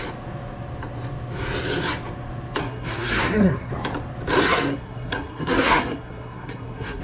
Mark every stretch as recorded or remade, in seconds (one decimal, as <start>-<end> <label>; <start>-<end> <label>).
0.0-2.6 recorded; 2.6-3.7 remade; 3.7-4.4 recorded; 4.4-7.0 remade